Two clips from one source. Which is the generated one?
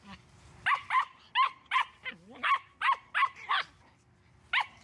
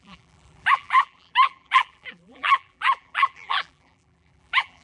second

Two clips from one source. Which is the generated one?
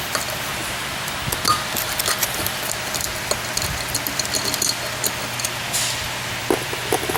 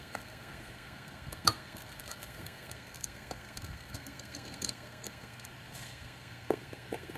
second